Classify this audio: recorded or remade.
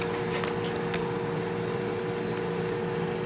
recorded